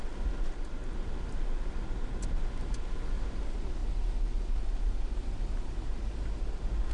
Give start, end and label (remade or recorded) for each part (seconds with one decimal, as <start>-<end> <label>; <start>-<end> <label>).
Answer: 0.0-0.8 recorded; 0.8-1.7 remade; 1.7-6.9 recorded